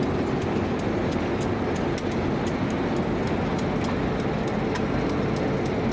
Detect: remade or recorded recorded